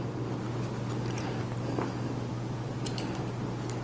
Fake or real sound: real